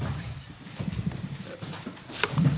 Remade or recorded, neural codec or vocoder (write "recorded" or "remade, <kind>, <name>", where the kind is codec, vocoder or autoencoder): remade, vocoder, BigVGAN v2